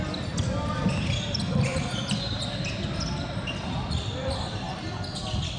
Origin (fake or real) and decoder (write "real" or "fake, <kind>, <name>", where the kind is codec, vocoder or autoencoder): real